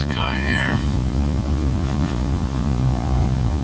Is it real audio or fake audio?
fake